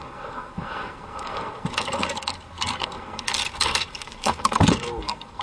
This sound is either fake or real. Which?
fake